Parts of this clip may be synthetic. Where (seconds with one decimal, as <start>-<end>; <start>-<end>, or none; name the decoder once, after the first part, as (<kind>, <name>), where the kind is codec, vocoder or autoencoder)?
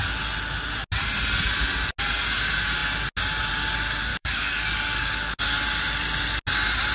4.1-5.4 (codec, DAC)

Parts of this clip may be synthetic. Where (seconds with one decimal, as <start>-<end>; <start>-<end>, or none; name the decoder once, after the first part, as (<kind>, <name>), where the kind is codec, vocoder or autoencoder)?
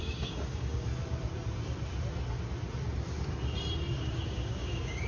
0.0-0.9 (codec, DAC); 4.0-5.1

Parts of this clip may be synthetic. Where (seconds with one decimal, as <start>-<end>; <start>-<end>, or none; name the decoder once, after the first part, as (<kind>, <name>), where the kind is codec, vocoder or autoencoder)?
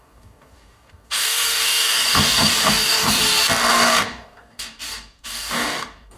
0.0-3.2 (codec, DAC); 3.7-6.2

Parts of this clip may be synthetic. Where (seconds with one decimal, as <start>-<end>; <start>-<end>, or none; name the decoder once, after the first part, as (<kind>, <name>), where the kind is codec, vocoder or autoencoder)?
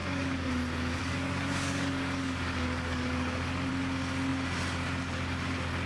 0.0-0.5 (codec, DAC); 1.0-3.7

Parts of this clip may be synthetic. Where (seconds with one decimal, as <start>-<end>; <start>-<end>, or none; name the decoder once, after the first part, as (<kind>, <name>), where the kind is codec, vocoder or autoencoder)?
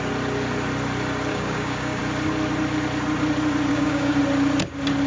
1.3-2.0 (codec, DAC); 3.7-4.2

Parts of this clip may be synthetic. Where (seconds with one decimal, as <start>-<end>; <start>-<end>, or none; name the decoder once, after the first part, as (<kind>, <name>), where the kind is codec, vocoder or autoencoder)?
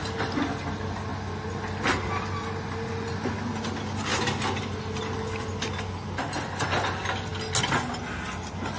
none